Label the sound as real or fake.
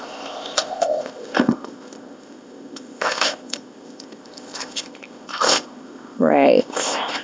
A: fake